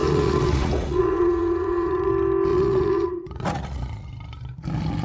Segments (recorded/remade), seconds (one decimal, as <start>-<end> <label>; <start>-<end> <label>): 0.0-2.1 remade; 2.1-2.5 recorded; 2.5-4.1 remade; 4.1-5.0 recorded